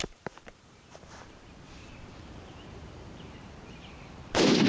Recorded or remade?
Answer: remade